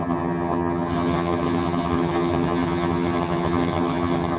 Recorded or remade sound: remade